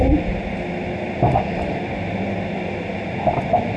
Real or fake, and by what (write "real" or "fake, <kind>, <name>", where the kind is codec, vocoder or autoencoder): real